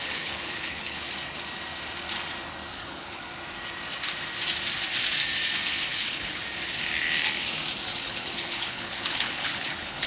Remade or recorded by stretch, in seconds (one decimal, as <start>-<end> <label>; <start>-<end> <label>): 0.0-1.1 remade; 1.1-2.7 recorded; 2.7-3.2 remade; 3.2-5.9 recorded; 5.9-6.4 remade; 6.4-7.9 recorded; 7.9-10.1 remade

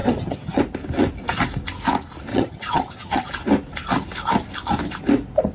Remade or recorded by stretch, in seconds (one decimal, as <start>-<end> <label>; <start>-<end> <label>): 0.0-0.6 remade; 0.6-2.3 recorded; 2.3-3.3 remade; 3.3-5.5 recorded

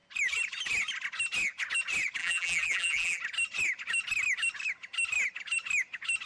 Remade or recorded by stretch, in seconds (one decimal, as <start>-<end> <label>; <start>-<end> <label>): 0.0-2.2 recorded; 2.2-3.2 remade; 3.2-6.3 recorded

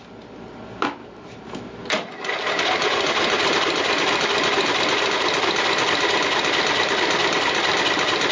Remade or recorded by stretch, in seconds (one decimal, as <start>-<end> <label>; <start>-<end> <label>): 0.0-1.0 recorded; 1.0-2.6 remade; 2.6-8.3 recorded

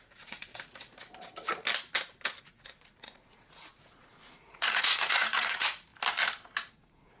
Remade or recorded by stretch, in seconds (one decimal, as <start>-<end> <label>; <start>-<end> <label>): 0.0-0.5 remade; 0.5-2.4 recorded; 2.4-5.9 remade; 5.9-6.7 recorded; 6.7-7.2 remade

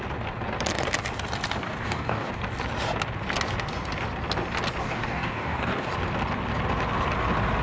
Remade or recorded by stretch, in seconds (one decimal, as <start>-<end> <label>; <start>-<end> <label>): 0.0-1.6 recorded; 1.6-2.3 remade; 2.3-4.8 recorded; 4.8-5.9 remade; 5.9-7.6 recorded